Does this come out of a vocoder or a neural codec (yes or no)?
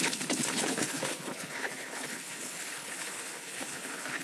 yes